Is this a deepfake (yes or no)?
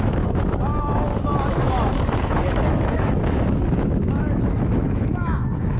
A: yes